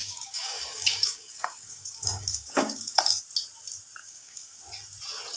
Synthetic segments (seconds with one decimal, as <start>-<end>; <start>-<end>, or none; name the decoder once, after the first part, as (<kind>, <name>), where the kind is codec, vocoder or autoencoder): 0.0-3.2 (codec, DAC); 4.0-4.6